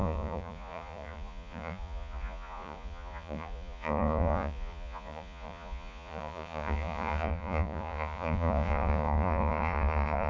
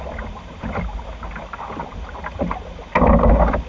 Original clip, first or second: second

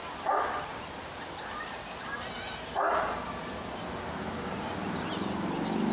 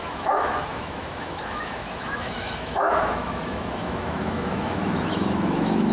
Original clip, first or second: first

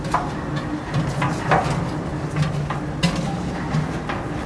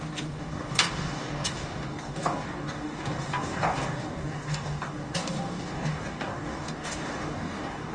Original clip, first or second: first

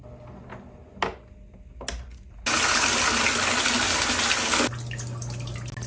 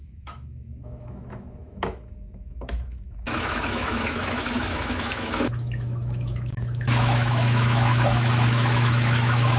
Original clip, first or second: first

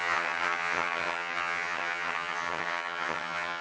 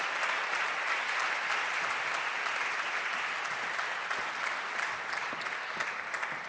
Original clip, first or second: second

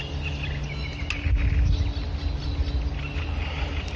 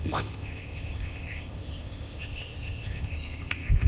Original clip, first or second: first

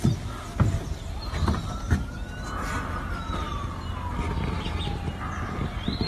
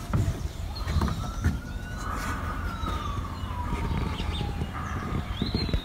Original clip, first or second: first